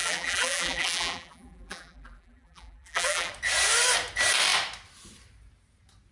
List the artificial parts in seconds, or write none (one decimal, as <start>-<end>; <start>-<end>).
0.0-3.3